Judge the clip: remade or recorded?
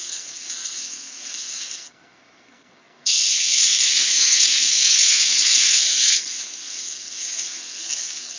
remade